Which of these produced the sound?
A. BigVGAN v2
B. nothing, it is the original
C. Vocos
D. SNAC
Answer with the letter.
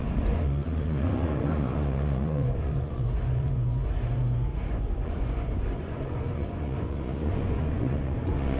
C